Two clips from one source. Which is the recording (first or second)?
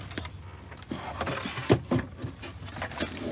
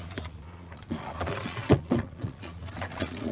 first